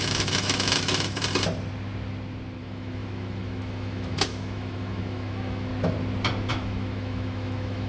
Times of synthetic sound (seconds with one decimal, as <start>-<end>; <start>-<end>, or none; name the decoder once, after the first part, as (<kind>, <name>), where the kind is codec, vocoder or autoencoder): 0.0-1.2 (autoencoder, DAC-VAE); 2.6-5.7; 6.5-7.9

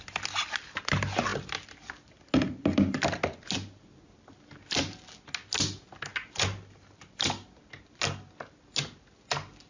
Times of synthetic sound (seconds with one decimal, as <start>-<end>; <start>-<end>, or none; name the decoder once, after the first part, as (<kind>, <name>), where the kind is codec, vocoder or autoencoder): none

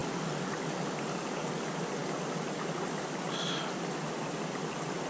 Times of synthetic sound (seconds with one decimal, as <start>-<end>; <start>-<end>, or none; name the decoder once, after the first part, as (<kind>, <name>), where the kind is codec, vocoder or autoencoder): none